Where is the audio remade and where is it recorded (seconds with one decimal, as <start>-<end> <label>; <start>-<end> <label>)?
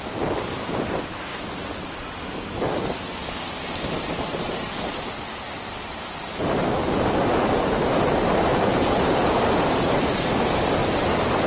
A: 0.0-1.3 remade; 1.3-4.0 recorded; 4.0-10.8 remade; 10.8-11.5 recorded